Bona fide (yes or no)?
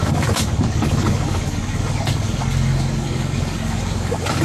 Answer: no